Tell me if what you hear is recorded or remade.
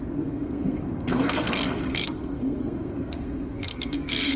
remade